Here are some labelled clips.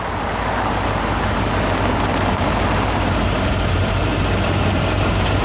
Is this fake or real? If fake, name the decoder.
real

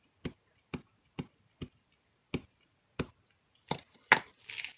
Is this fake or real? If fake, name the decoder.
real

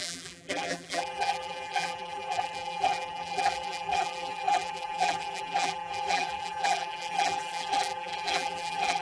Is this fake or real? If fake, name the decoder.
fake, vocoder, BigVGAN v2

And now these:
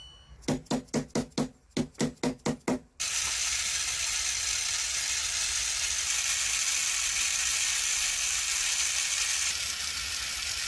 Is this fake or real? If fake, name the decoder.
real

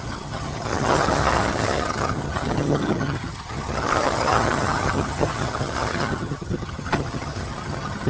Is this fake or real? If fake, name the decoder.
fake, vocoder, HiFi-GAN